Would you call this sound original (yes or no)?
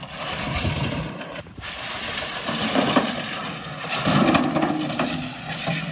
no